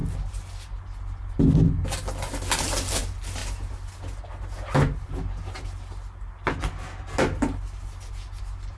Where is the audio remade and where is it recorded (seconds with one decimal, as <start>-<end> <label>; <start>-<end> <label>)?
0.0-8.8 recorded